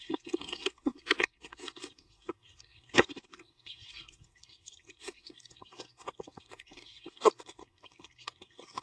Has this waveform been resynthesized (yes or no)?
yes